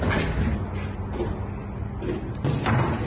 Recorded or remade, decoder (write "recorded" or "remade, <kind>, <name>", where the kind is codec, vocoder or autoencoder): recorded